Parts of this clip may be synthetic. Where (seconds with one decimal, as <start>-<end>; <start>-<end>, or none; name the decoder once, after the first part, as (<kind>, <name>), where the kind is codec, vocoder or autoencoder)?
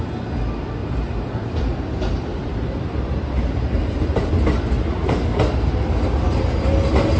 0.8-4.3 (vocoder, BigVGAN v2)